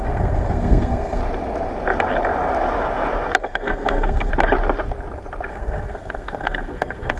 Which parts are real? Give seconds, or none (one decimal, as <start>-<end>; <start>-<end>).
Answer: 1.2-3.4; 4.3-5.5